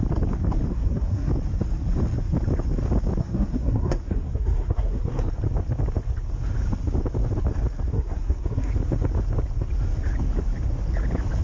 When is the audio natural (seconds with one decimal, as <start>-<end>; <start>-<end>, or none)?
0.0-0.7; 1.3-3.2; 5.2-7.9; 8.7-11.4